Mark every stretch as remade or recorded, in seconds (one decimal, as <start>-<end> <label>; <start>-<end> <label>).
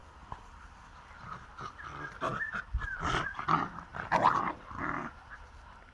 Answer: 0.0-1.1 remade; 1.1-5.9 recorded